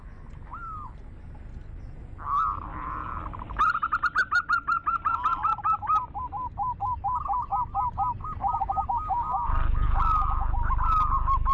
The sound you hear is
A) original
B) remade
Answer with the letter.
A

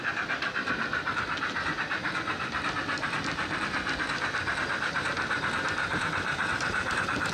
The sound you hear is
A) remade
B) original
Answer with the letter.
A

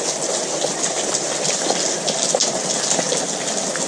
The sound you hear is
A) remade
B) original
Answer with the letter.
B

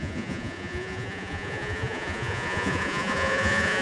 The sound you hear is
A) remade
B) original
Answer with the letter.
A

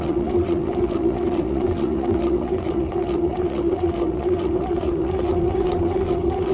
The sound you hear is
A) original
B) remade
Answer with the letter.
B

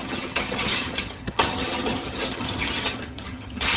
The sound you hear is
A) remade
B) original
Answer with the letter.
A